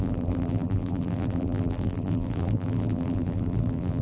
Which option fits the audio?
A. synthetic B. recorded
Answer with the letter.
A